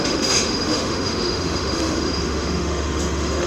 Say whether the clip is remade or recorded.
remade